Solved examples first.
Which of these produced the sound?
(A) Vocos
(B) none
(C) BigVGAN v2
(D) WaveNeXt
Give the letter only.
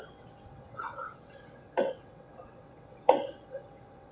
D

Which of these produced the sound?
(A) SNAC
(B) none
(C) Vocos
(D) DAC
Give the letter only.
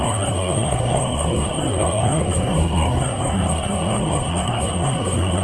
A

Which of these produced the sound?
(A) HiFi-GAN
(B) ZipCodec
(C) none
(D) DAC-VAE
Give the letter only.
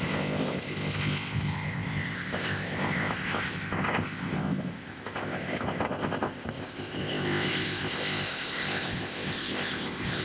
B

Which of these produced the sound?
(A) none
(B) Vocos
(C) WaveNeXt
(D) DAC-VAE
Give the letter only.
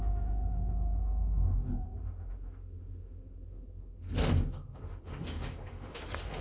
D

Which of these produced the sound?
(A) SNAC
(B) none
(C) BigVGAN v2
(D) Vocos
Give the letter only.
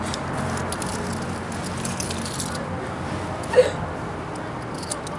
B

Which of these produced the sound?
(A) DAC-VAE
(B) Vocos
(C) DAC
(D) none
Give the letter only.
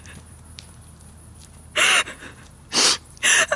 D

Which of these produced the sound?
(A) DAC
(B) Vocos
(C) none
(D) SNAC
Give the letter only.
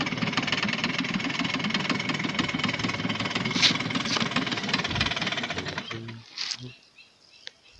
C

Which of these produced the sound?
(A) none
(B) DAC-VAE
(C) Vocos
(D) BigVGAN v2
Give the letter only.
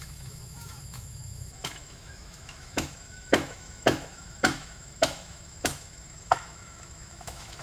B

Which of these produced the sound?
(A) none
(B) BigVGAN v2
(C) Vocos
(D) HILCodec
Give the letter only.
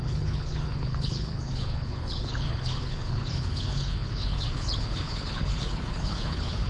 D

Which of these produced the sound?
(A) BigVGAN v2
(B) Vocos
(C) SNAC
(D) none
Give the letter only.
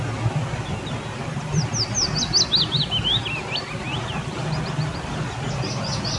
D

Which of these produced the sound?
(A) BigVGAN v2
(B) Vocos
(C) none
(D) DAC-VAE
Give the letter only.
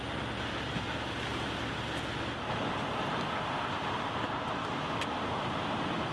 C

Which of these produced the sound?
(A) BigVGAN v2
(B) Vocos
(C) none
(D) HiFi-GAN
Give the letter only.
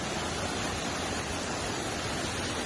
C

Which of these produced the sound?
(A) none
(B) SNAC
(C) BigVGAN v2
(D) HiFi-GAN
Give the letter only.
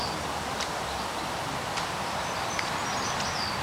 A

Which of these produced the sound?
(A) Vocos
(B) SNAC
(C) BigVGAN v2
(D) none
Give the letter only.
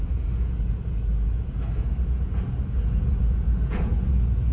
A